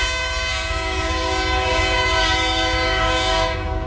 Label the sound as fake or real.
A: fake